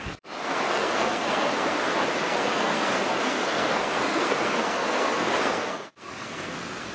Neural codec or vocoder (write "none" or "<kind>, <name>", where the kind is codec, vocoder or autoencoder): codec, SNAC